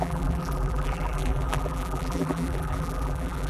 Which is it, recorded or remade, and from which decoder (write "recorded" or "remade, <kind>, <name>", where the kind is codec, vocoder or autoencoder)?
remade, vocoder, BigVGAN v2